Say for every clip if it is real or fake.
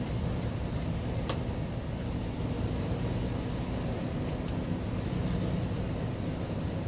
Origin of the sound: real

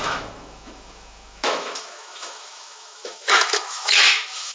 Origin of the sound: fake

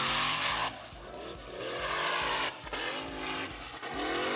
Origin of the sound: real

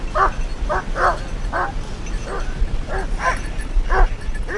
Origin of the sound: real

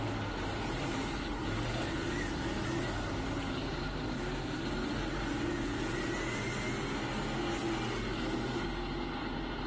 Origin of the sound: real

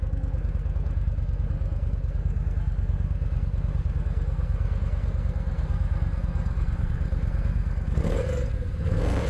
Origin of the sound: fake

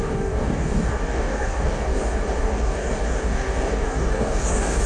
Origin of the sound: fake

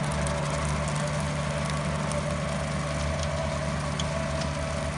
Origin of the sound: real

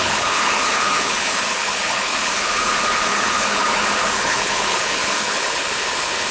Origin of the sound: fake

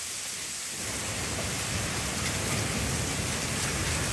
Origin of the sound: real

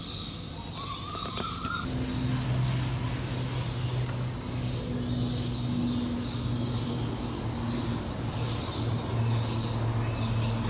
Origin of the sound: real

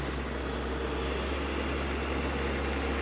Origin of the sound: real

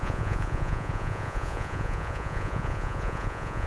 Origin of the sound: fake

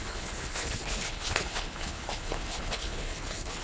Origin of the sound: fake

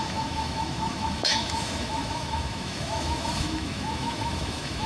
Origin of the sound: fake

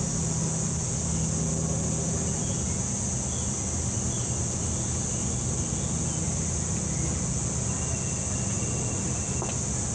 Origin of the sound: real